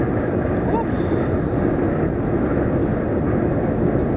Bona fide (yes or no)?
yes